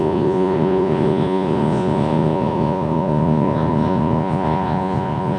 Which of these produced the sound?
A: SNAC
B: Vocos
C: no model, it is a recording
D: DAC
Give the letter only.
B